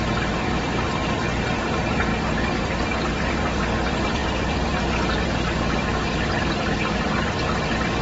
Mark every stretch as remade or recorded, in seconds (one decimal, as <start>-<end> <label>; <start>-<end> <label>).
0.0-2.1 remade; 2.1-2.6 recorded; 2.6-8.0 remade